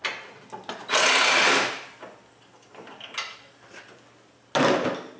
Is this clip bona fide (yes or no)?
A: yes